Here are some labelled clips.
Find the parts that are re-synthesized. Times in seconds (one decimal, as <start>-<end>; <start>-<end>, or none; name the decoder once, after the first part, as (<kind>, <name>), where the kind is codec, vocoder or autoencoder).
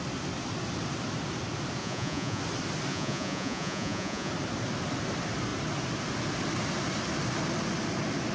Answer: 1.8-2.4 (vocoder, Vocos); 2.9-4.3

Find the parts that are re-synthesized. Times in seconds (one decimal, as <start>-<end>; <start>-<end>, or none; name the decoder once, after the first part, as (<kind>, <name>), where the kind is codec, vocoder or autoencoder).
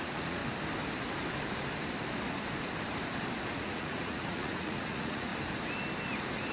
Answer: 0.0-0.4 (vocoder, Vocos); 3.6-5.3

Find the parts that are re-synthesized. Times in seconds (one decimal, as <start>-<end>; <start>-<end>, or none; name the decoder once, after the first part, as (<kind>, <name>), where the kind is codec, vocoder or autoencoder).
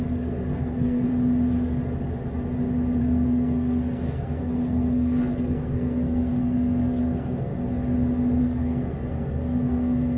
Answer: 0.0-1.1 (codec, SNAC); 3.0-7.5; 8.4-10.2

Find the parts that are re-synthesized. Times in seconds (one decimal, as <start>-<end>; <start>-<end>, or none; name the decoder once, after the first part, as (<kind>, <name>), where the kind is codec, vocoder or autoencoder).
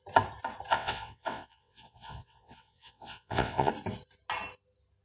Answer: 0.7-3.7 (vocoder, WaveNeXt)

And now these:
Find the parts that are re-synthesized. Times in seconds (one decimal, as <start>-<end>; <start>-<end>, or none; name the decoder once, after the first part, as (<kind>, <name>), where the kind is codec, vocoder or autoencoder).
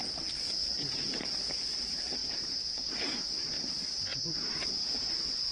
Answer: 0.6-1.2 (vocoder, Vocos); 2.2-2.9; 4.1-5.1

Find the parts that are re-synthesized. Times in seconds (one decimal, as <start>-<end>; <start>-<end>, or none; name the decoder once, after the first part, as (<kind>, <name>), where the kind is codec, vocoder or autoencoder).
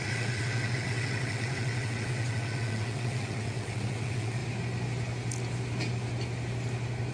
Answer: 0.0-4.4 (vocoder, WaveNeXt)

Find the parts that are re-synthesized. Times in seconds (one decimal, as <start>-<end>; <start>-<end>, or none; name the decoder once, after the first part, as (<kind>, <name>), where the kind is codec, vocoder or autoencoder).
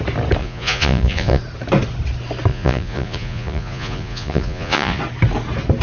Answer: 0.4-1.4 (vocoder, Vocos); 2.5-5.0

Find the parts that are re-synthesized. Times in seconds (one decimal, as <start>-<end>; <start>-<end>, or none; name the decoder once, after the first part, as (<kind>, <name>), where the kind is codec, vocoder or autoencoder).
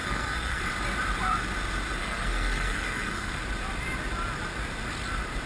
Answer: 0.0-0.6 (codec, SNAC); 2.0-3.4